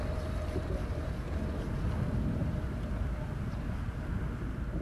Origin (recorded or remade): recorded